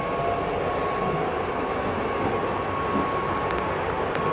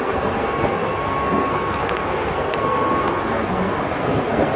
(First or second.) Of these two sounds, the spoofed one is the second